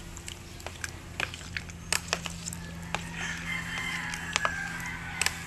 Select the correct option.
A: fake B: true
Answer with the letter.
B